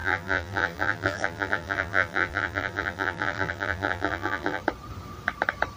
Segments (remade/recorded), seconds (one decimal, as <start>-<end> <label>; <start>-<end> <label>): 0.0-4.6 remade; 4.6-5.8 recorded

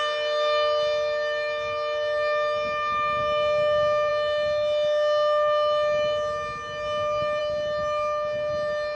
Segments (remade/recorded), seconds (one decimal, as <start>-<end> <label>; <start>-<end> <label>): 0.0-8.9 recorded

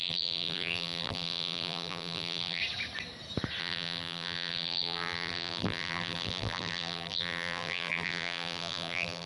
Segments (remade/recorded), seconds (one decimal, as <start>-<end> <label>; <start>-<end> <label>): 0.0-2.6 remade; 2.6-3.6 recorded; 3.6-9.3 remade

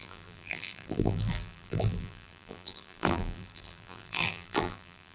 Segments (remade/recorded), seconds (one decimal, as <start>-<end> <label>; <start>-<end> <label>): 0.0-5.1 remade

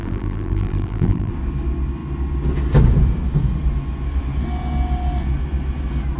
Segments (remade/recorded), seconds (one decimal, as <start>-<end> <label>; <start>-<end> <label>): 0.0-1.3 remade; 1.3-6.2 recorded

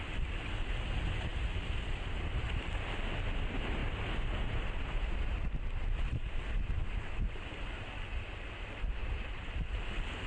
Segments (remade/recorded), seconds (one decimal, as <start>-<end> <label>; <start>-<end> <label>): 0.0-1.3 recorded; 1.3-2.8 remade; 2.8-9.0 recorded; 9.0-9.9 remade; 9.9-10.3 recorded

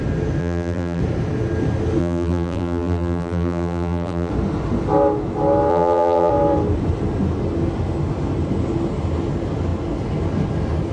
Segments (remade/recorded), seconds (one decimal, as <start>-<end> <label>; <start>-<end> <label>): 0.0-0.4 recorded; 0.4-1.0 remade; 1.0-2.0 recorded; 2.0-4.3 remade; 4.3-5.7 recorded; 5.7-6.3 remade; 6.3-10.9 recorded

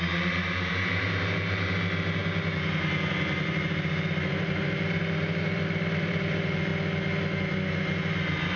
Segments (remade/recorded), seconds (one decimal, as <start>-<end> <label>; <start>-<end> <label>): 0.0-6.7 remade; 6.7-8.1 recorded; 8.1-8.6 remade